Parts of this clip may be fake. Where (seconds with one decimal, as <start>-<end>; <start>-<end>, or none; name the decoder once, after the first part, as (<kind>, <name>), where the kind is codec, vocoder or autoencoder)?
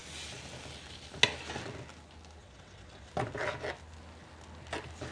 2.4-3.1 (vocoder, WaveNeXt)